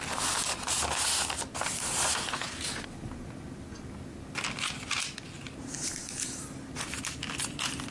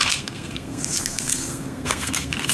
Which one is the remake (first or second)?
second